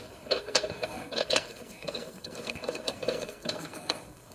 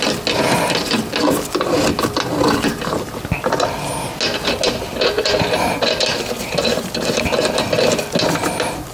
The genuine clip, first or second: second